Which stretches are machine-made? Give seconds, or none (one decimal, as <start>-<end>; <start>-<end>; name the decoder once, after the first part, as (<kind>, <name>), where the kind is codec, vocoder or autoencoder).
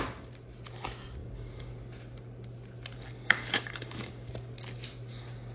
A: 1.2-1.7 (codec, DAC); 3.2-4.3